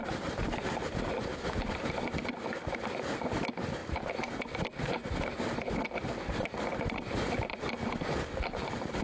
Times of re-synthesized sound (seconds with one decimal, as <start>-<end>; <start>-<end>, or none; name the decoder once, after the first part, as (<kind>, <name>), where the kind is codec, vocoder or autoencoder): none